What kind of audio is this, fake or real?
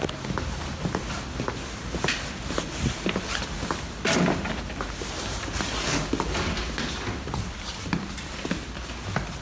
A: real